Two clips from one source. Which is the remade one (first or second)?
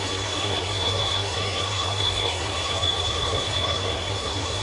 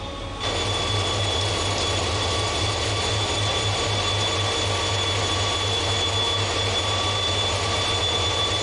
first